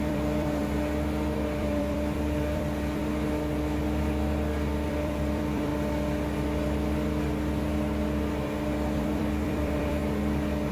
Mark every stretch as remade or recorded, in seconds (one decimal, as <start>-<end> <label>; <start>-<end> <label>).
0.0-0.6 remade; 0.6-1.6 recorded; 1.6-3.0 remade; 3.0-4.9 recorded; 4.9-5.7 remade; 5.7-9.0 recorded; 9.0-10.0 remade; 10.0-10.7 recorded